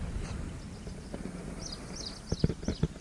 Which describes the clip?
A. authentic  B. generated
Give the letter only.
A